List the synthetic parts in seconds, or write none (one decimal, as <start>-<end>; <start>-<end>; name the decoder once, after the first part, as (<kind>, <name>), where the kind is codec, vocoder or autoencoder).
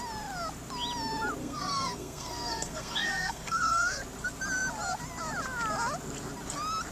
1.4-4.0 (codec, SNAC)